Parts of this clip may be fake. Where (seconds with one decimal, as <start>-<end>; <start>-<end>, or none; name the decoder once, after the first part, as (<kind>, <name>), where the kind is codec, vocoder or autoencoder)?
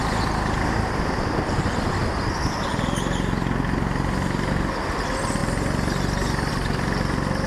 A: none